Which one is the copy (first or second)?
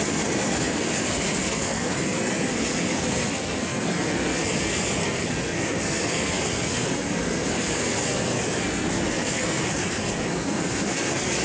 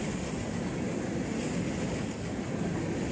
first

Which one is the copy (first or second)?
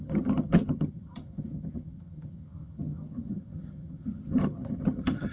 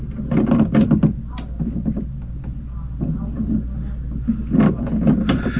first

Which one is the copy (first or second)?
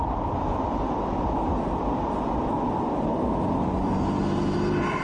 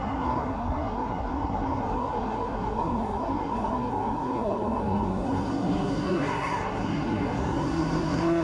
second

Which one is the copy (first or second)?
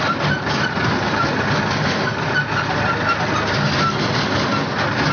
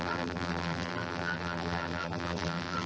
second